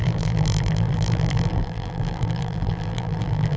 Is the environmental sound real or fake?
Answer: fake